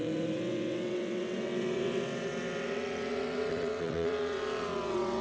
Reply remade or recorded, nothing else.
remade